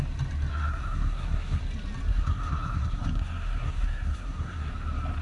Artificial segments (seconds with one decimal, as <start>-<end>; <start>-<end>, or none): 0.5-1.6; 2.1-4.7